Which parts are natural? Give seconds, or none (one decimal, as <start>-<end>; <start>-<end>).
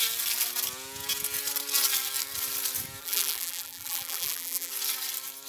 0.0-3.0; 4.7-5.5